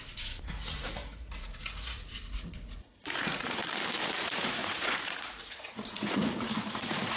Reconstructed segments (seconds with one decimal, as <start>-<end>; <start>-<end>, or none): 0.0-3.6; 4.1-7.2